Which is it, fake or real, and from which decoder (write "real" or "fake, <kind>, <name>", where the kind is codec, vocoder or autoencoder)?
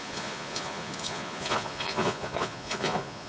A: fake, vocoder, Vocos